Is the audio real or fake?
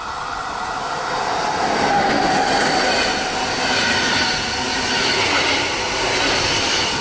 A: real